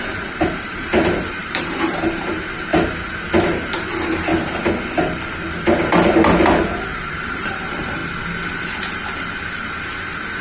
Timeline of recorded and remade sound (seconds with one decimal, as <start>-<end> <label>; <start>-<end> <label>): 0.0-2.7 remade; 2.7-3.4 recorded; 3.4-4.3 remade; 4.3-7.0 recorded; 7.0-8.0 remade; 8.0-10.4 recorded